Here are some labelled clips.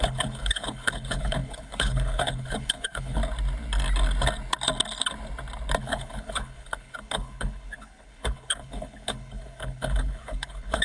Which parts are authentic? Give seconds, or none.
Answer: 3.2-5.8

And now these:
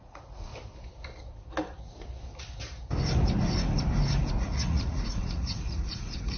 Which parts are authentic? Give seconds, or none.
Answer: 0.5-4.3

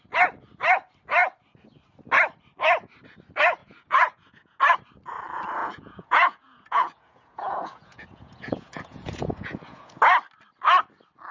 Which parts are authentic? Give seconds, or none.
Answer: 0.0-3.6; 4.6-5.6; 10.0-11.3

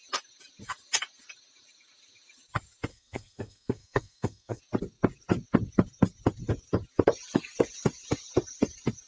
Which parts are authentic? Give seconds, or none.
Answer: 0.0-2.9; 4.6-9.1

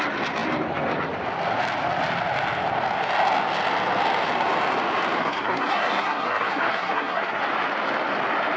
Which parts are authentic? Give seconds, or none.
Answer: 0.0-5.2; 7.4-8.6

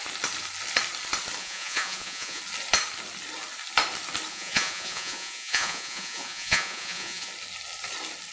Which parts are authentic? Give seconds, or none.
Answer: 0.0-1.4; 2.4-4.3; 7.3-8.3

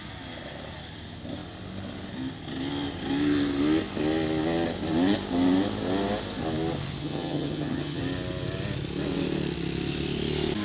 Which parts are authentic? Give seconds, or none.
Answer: 0.0-7.0; 8.0-10.6